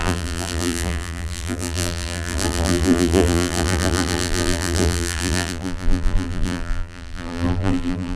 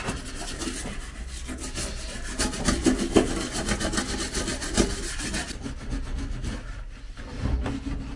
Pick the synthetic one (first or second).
first